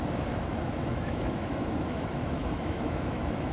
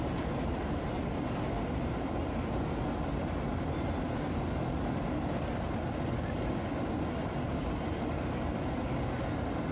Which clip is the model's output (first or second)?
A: first